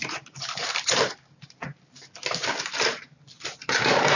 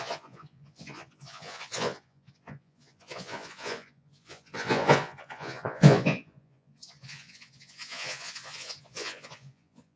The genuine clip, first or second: first